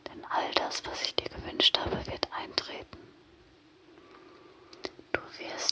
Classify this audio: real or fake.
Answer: real